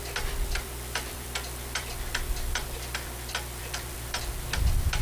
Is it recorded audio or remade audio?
remade